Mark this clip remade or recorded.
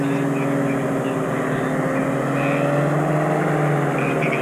recorded